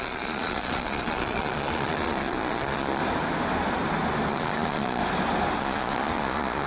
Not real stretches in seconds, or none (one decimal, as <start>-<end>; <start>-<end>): 0.0-3.0; 4.3-5.0; 5.6-6.7

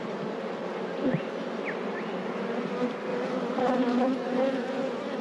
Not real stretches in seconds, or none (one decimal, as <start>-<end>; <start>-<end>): 0.6-2.2; 3.1-3.7